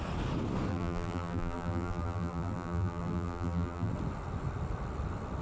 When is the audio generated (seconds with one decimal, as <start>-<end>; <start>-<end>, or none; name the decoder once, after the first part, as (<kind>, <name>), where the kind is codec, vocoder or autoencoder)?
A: 0.7-3.9 (vocoder, BigVGAN v2)